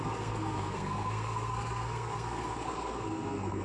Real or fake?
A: fake